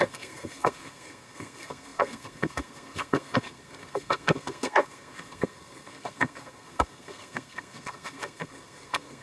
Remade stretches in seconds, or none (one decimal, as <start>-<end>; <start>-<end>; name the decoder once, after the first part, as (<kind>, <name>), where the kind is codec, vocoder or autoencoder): 0.0-9.2 (codec, SNAC)